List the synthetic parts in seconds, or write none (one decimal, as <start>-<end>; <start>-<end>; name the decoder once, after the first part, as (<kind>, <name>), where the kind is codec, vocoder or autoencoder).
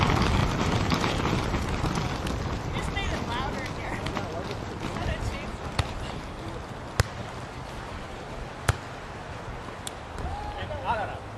0.4-1.6 (vocoder, BigVGAN v2)